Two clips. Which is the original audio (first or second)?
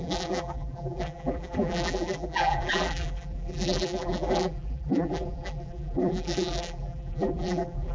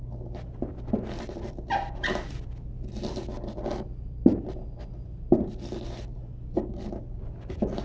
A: second